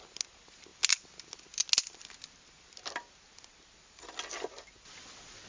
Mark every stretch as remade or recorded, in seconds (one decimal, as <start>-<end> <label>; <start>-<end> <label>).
0.0-5.5 recorded